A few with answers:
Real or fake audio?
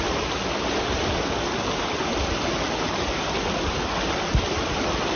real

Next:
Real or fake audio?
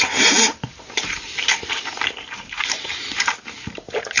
fake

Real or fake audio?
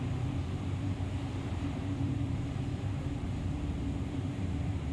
fake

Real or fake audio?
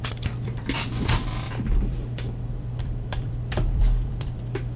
fake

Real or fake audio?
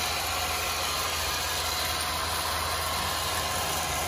real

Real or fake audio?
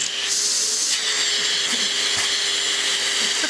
real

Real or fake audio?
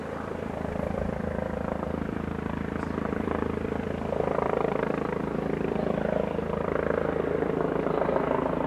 fake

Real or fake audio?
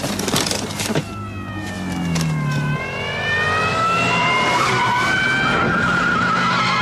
real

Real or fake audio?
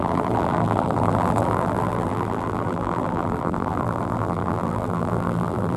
fake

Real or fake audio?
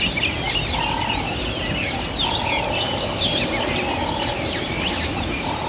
fake